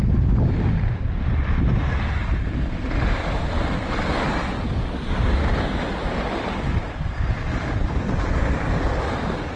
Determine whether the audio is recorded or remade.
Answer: recorded